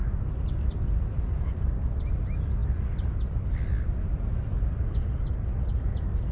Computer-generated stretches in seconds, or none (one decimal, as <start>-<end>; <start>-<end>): 0.0-2.1